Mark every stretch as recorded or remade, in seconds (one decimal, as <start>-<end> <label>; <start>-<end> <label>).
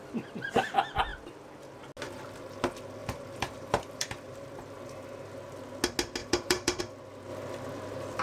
0.0-3.0 recorded; 3.0-4.4 remade; 4.4-6.2 recorded; 6.2-6.8 remade; 6.8-8.2 recorded